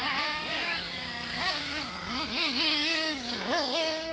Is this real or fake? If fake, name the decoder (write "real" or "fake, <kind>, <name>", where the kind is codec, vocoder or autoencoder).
fake, codec, DAC